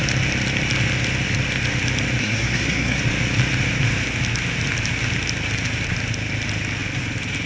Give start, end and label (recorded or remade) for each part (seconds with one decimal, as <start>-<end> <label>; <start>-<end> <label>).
0.0-2.2 recorded; 2.2-3.0 remade; 3.0-7.5 recorded